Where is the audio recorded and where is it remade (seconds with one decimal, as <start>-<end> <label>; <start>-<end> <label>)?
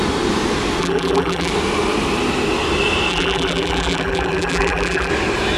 0.0-0.8 recorded; 0.8-1.5 remade; 1.5-3.1 recorded; 3.1-5.1 remade; 5.1-5.6 recorded